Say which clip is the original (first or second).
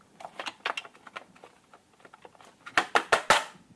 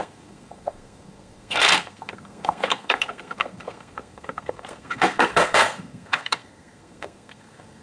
first